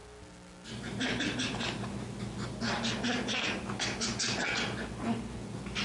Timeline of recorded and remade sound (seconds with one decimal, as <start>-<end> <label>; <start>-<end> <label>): 0.0-5.8 recorded